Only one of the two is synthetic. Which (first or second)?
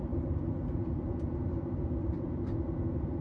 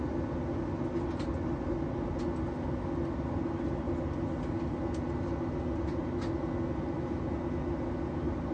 first